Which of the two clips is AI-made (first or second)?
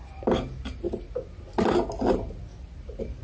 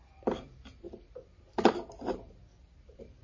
second